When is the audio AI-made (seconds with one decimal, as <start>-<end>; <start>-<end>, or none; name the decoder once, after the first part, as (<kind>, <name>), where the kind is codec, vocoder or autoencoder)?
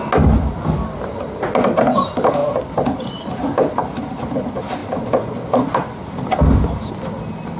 none